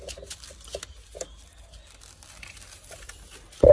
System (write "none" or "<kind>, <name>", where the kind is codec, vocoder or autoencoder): none